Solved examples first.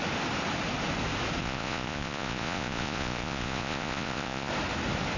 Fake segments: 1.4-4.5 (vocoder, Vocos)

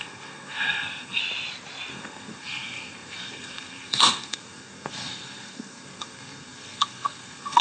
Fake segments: 0.0-1.2 (codec, SNAC); 1.9-7.6

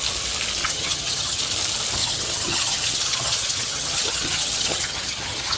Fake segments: 0.6-1.4 (vocoder, HiFi-GAN); 2.0-5.6

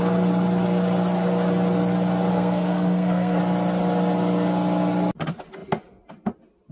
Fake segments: 2.3-3.4 (codec, SNAC)

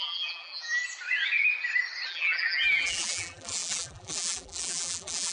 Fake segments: 0.0-0.8 (vocoder, BigVGAN v2); 2.1-5.3

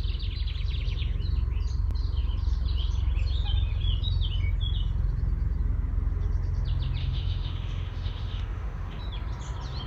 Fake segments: 7.0-9.0 (autoencoder, DAC-VAE)

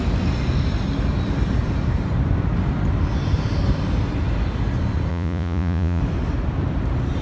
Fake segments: 5.1-6.0 (vocoder, Vocos)

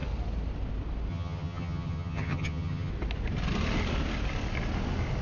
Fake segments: 1.1-2.9 (vocoder, HiFi-GAN)